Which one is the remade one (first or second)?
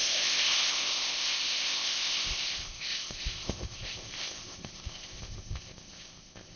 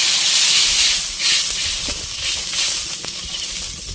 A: first